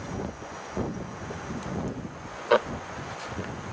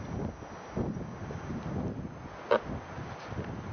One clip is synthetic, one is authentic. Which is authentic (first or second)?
second